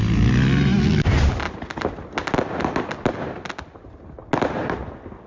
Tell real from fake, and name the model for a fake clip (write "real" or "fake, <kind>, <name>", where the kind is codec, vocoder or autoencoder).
real